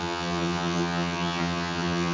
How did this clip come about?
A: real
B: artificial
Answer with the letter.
B